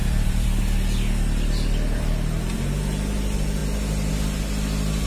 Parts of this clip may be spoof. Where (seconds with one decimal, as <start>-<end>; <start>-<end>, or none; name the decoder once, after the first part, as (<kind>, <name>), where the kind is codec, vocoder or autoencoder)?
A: 0.0-0.6 (vocoder, BigVGAN v2)